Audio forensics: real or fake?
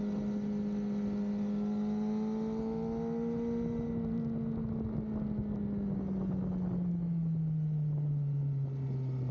real